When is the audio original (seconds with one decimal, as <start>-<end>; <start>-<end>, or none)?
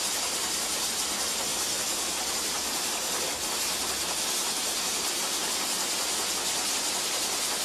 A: 1.5-2.3